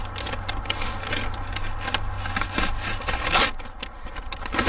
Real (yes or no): yes